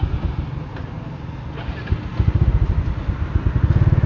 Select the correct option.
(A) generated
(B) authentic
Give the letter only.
B